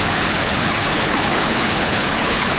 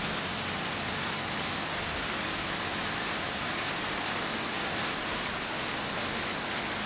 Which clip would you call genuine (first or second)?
second